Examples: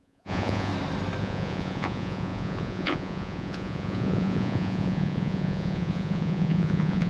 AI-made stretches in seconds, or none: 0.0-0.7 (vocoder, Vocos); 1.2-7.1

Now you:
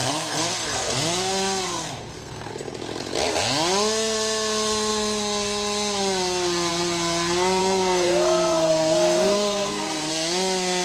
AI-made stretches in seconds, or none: 0.0-2.5 (codec, SNAC); 7.6-10.1

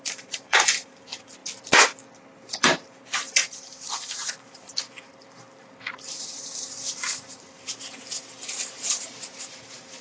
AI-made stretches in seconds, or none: 0.0-1.4 (vocoder, BigVGAN v2); 2.6-10.0

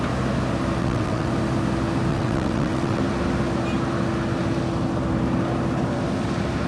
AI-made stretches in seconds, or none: 0.8-1.3 (vocoder, WaveNeXt); 2.1-3.0

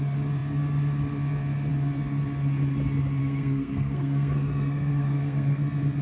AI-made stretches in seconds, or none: 3.2-5.6 (codec, SNAC)

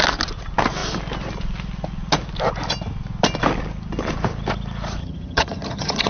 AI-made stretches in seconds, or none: 5.0-6.1 (vocoder, HiFi-GAN)

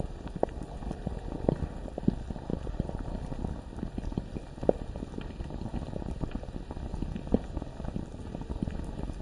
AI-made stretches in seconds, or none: 2.5-3.1 (vocoder, BigVGAN v2)

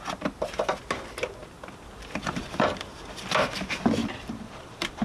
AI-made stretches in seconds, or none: 1.4-3.3 (vocoder, BigVGAN v2); 4.0-5.0